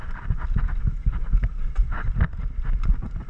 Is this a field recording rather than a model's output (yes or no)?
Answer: yes